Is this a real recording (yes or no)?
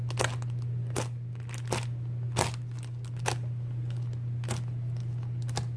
yes